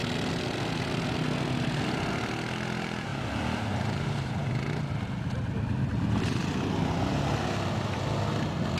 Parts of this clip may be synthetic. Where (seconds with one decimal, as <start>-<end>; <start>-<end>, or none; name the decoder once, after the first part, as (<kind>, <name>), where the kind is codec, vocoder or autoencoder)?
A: 3.1-4.3 (vocoder, BigVGAN v2)